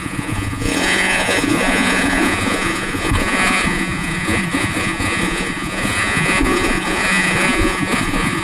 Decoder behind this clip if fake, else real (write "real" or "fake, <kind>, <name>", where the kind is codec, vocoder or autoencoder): fake, vocoder, Vocos